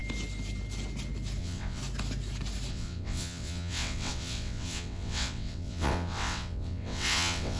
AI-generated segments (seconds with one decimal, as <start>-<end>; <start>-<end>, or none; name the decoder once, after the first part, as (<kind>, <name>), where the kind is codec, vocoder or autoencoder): 1.4-1.8 (vocoder, WaveNeXt); 2.7-7.6

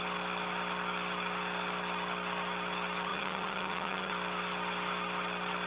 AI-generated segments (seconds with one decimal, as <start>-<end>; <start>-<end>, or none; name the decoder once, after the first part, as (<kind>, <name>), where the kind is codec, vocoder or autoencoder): 3.1-4.1 (vocoder, WaveNeXt)

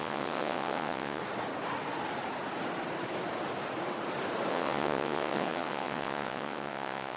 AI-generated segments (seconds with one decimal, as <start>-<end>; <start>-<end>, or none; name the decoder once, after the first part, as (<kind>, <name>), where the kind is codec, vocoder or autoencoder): 0.0-1.2 (vocoder, WaveNeXt); 4.5-7.2

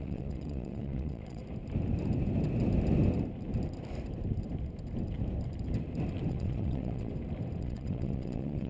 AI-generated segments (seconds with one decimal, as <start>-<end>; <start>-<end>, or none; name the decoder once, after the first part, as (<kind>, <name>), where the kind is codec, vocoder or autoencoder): 0.0-1.4 (vocoder, WaveNeXt); 6.3-7.1; 7.6-8.7

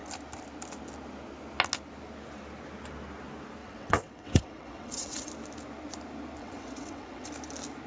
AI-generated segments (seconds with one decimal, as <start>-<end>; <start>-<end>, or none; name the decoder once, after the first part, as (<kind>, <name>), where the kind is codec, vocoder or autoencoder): 3.6-5.3 (vocoder, WaveNeXt); 6.4-7.3

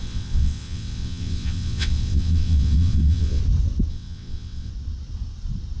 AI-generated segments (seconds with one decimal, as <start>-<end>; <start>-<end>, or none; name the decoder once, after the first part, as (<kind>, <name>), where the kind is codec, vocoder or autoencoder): 0.0-3.4 (vocoder, WaveNeXt); 3.9-4.7

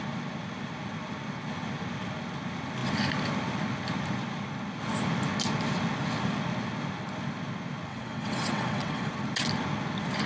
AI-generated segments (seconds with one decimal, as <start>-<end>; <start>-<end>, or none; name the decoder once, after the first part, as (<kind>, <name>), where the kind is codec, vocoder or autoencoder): 7.9-9.1 (vocoder, WaveNeXt)